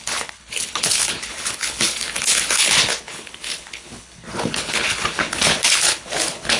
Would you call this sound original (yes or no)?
no